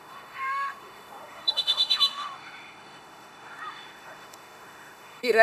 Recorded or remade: remade